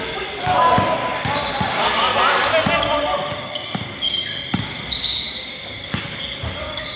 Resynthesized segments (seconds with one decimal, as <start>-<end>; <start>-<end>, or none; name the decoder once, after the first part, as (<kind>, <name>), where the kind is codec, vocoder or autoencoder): 0.0-1.0 (codec, DAC); 1.7-2.1; 3.4-4.3; 5.4-7.0